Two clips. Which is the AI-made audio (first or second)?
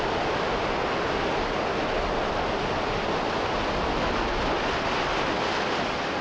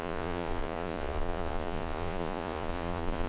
second